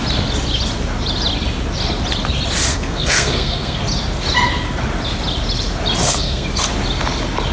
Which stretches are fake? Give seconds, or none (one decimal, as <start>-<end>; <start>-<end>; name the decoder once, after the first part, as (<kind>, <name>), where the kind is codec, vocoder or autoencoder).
2.7-3.8 (codec, SNAC); 6.0-6.5